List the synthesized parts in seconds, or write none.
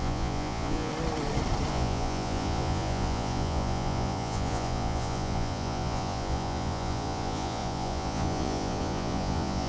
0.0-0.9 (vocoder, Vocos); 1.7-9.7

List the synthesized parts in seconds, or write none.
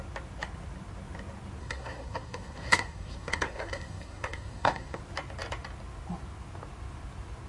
1.6-5.0 (codec, SNAC)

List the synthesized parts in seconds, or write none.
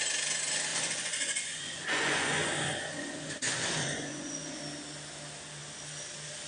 0.7-4.6 (vocoder, Vocos)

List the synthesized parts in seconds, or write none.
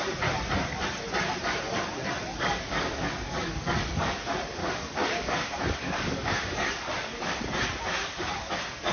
2.3-4.1 (codec, DAC); 4.6-7.4; 8.0-8.5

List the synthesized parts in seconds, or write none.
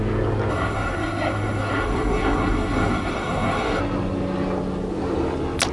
0.5-3.8 (codec, SNAC)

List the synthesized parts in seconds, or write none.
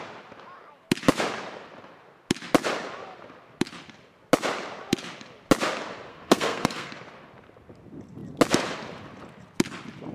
6.1-6.9 (codec, SNAC)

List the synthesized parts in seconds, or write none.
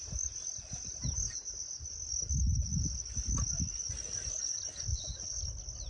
4.9-5.4 (vocoder, WaveNeXt)